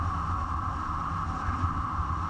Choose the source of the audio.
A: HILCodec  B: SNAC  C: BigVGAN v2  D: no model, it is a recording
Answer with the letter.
D